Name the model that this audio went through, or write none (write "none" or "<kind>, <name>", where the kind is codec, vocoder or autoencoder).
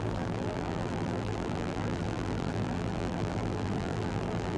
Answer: vocoder, BigVGAN v2